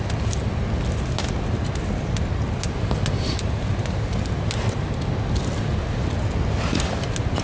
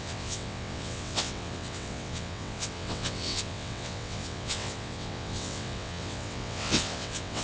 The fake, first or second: second